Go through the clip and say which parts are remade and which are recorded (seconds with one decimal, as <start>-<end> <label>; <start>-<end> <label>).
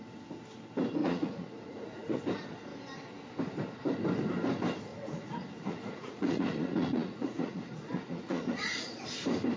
0.0-1.0 recorded; 1.0-2.2 remade; 2.2-4.9 recorded; 4.9-9.0 remade; 9.0-9.6 recorded